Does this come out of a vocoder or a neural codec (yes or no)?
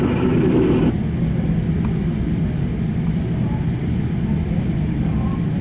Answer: no